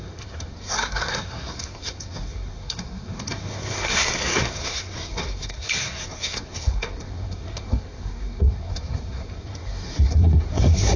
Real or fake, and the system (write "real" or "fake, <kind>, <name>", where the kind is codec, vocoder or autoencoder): fake, codec, SNAC